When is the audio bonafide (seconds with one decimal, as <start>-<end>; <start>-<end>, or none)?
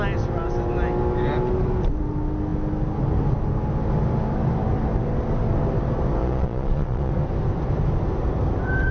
0.0-6.2; 7.1-8.9